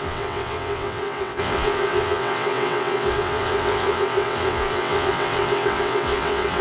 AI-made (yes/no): yes